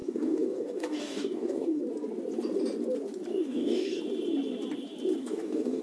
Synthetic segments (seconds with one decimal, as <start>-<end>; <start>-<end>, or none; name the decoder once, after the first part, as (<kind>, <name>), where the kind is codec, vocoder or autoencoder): 0.0-1.8 (codec, DAC); 3.3-4.0; 5.2-5.8